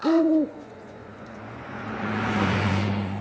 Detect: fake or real fake